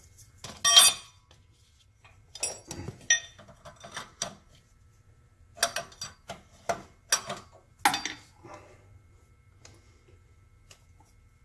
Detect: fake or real real